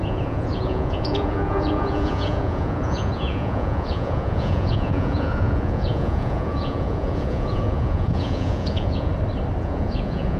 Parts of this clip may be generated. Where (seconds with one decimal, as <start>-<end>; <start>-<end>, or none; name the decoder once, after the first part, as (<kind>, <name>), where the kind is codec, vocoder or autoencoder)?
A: 0.0-9.1 (vocoder, Vocos); 9.6-10.4